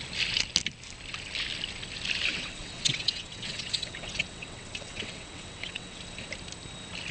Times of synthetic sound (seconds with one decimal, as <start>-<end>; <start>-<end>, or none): 2.3-6.0